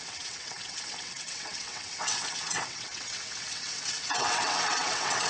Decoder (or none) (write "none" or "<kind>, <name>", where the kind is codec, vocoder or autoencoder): vocoder, WaveNeXt